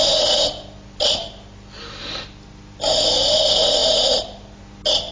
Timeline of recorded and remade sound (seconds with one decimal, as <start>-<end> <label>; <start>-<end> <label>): 0.0-5.1 recorded